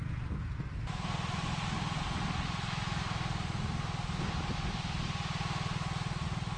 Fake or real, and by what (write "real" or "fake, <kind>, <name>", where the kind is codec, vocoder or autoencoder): real